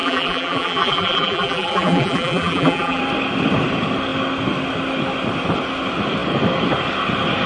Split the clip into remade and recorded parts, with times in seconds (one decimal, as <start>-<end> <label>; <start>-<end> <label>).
0.0-3.0 remade; 3.0-7.5 recorded